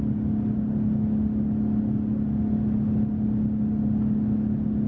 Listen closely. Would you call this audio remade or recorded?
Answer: recorded